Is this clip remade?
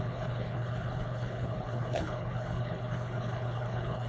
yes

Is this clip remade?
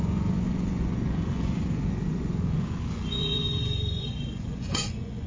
yes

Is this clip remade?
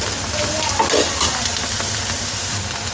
no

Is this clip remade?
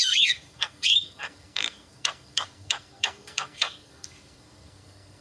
yes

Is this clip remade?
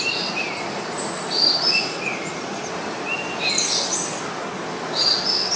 no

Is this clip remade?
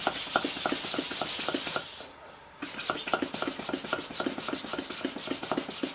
no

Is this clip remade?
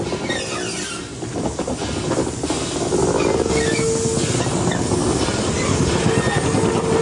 no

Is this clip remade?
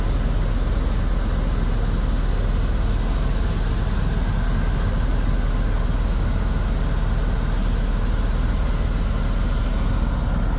no